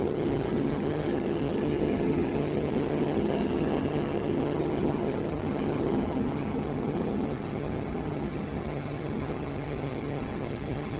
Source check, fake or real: fake